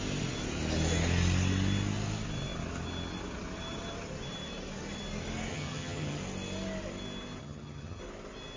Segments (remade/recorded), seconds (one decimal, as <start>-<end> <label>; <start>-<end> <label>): 0.0-5.5 recorded; 5.5-6.2 remade; 6.2-7.4 recorded; 7.4-8.0 remade; 8.0-8.6 recorded

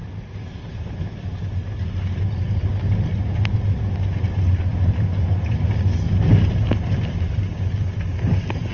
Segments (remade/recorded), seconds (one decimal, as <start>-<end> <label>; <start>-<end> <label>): 0.0-8.7 recorded

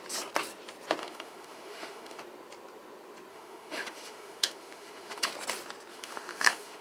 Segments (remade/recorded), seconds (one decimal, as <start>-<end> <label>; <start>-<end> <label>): 0.0-1.0 recorded; 1.0-2.2 remade; 2.2-3.3 recorded; 3.3-5.3 remade; 5.3-5.9 recorded; 5.9-6.8 remade

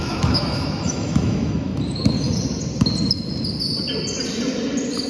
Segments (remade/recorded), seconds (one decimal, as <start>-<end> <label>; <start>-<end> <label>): 0.0-1.7 remade; 1.7-5.1 recorded

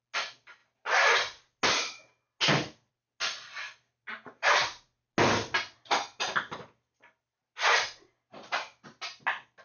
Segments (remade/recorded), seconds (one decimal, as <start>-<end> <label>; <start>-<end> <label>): 0.0-9.6 recorded

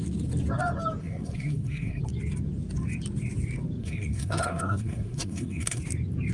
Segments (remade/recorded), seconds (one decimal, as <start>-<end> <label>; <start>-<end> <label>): 0.0-1.0 recorded; 1.0-2.0 remade; 2.0-3.8 recorded; 3.8-5.8 remade; 5.8-6.3 recorded